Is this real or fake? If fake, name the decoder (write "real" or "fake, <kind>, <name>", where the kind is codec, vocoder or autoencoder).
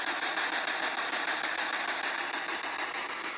real